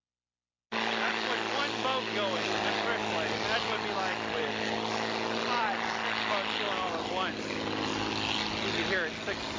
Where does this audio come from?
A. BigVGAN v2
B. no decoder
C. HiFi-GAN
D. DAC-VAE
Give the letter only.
B